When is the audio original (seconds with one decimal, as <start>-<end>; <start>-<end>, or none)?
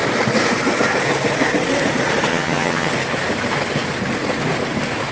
0.0-2.3; 2.9-5.1